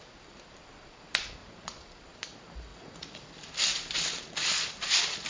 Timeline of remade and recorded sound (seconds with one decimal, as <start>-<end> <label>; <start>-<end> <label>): 0.0-1.4 recorded; 1.4-1.9 remade; 1.9-2.7 recorded; 2.7-3.3 remade; 3.3-5.3 recorded